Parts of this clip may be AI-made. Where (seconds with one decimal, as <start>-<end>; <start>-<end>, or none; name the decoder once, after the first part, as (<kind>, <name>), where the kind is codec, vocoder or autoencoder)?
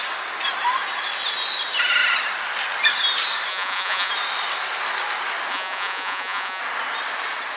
3.5-4.1 (vocoder, Vocos); 5.5-6.6